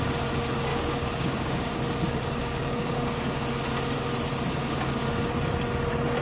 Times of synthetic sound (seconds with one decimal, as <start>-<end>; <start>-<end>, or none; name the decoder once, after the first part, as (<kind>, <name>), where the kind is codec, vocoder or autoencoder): 0.7-1.8 (codec, DAC); 2.4-3.4